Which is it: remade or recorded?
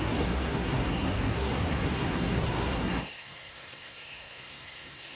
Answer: remade